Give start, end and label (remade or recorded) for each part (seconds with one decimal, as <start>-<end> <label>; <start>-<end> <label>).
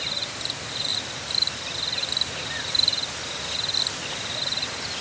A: 0.0-5.0 recorded